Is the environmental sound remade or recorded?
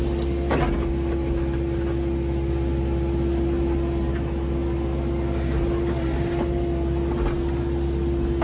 recorded